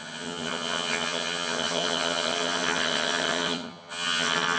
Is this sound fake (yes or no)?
yes